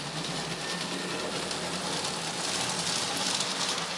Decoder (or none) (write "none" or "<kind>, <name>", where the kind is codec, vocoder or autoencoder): none